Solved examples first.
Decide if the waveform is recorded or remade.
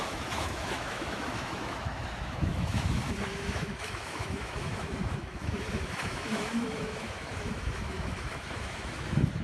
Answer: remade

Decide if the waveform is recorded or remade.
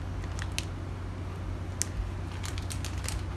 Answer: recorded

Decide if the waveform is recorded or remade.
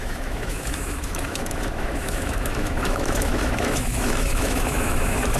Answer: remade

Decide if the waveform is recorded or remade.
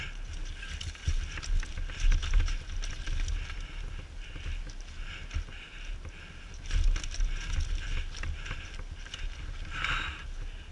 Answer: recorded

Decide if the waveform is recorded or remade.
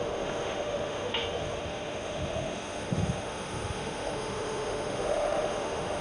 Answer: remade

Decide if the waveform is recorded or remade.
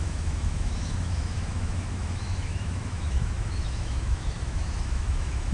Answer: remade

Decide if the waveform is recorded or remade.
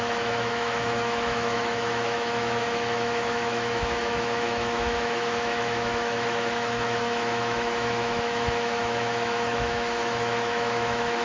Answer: remade